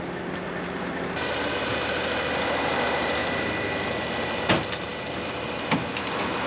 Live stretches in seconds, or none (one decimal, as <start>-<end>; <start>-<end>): 0.0-6.5